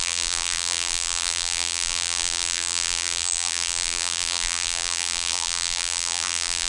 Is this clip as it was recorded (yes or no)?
no